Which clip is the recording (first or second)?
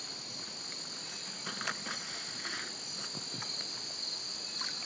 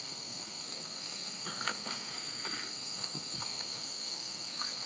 first